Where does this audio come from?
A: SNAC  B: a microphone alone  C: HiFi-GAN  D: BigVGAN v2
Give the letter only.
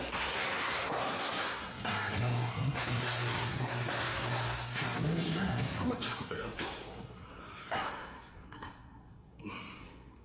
A